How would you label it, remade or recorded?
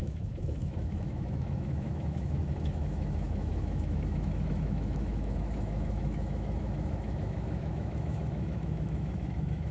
remade